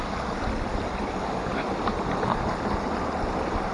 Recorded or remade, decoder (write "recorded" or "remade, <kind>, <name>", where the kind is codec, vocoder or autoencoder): recorded